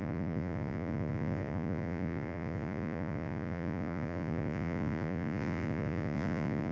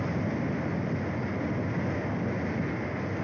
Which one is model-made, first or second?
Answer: first